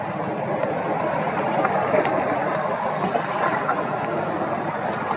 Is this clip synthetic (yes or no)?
no